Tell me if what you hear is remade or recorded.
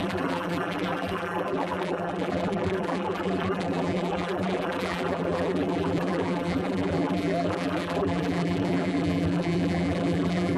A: remade